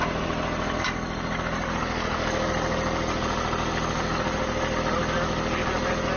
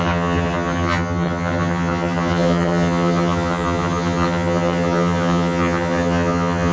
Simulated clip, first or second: second